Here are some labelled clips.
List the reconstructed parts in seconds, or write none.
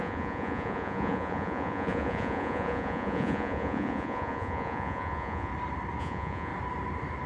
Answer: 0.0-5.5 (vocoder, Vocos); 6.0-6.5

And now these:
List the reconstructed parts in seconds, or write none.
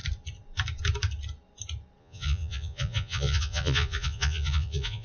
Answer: 2.0-5.0 (vocoder, Vocos)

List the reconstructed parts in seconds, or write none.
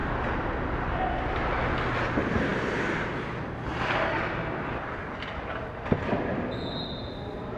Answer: none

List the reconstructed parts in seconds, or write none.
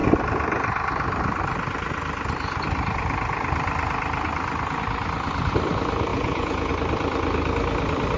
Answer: 6.1-6.7 (vocoder, Vocos)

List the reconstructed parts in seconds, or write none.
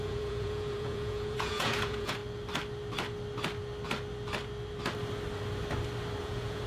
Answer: 0.0-2.2 (vocoder, Vocos); 6.2-6.7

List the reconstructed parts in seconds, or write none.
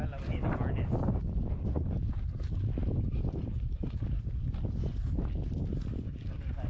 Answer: none